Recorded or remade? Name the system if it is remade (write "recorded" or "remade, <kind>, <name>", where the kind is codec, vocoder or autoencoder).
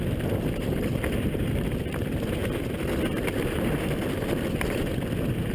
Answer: recorded